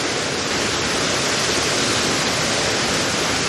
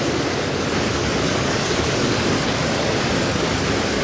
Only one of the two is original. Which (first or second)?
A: first